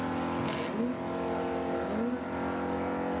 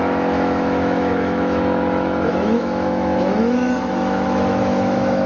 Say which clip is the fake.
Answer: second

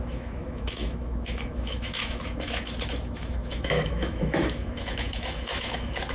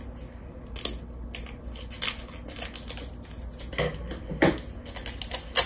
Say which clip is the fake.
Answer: first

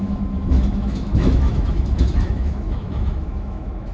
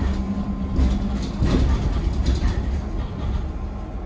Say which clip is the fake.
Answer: first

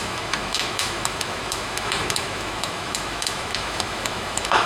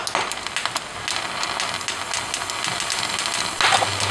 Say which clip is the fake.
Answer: first